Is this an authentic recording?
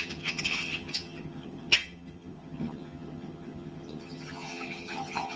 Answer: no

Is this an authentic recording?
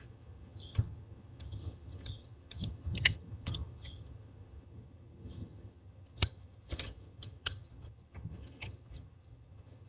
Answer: no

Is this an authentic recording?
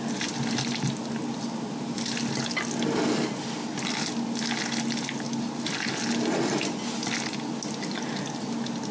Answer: yes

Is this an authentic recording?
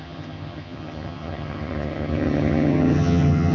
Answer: no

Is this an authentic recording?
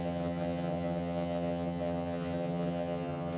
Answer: no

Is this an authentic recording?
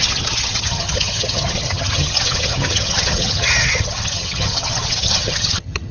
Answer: no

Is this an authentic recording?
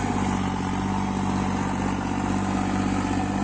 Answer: yes